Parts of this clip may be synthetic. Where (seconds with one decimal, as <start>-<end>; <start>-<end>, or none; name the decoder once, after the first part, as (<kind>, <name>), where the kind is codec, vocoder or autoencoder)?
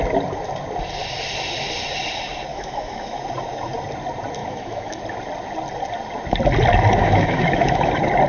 2.5-3.2 (autoencoder, DAC-VAE); 4.4-5.0; 7.0-7.9